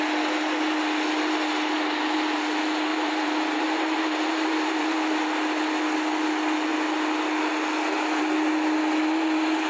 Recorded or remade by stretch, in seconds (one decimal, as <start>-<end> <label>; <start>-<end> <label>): 0.0-2.9 recorded; 2.9-5.1 remade; 5.1-9.7 recorded